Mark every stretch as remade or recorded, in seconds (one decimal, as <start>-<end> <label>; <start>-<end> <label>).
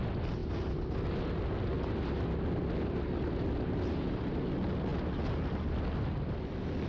0.0-6.9 recorded